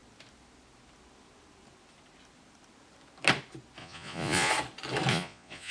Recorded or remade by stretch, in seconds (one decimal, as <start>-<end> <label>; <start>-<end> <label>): 0.0-3.8 recorded; 3.8-4.5 remade; 4.5-5.1 recorded; 5.1-5.7 remade